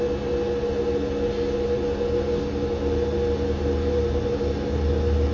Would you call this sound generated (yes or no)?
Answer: no